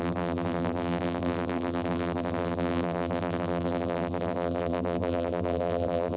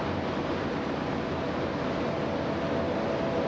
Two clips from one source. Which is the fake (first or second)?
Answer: first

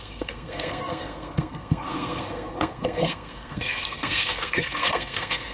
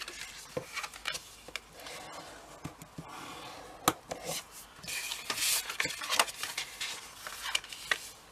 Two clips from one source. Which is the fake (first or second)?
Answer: first